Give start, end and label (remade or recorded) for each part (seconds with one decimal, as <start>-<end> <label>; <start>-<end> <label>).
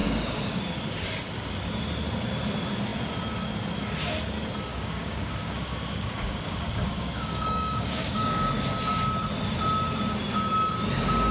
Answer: 0.0-0.6 remade; 0.6-4.7 recorded; 4.7-8.5 remade; 8.5-11.3 recorded